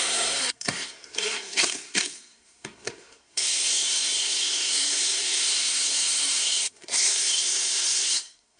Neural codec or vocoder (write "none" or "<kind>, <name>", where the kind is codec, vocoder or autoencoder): codec, SNAC